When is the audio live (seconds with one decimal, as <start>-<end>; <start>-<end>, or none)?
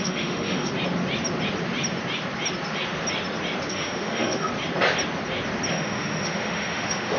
0.7-3.7; 4.5-5.7